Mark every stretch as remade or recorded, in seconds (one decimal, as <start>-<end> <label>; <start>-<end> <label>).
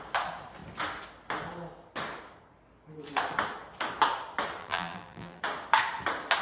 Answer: 0.0-4.6 recorded; 4.6-5.4 remade; 5.4-6.4 recorded